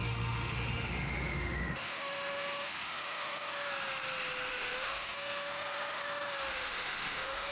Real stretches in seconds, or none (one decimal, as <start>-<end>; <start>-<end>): 3.7-4.5